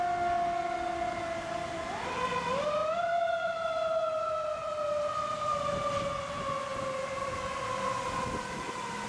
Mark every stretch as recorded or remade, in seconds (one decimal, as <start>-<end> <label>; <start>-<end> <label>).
0.0-2.8 recorded; 2.8-5.1 remade; 5.1-9.1 recorded